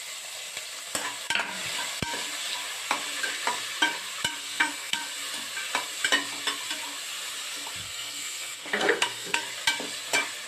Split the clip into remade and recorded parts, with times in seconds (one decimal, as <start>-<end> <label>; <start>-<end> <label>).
0.0-4.4 recorded; 4.4-5.1 remade; 5.1-7.8 recorded; 7.8-9.4 remade; 9.4-10.5 recorded